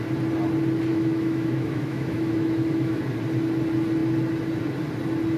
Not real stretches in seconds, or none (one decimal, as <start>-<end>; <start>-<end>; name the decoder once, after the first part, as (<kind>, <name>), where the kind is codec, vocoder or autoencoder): 0.9-3.0 (autoencoder, DAC-VAE)